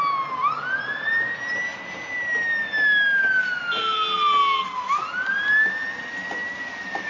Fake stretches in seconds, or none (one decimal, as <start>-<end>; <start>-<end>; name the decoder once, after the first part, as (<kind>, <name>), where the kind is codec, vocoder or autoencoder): none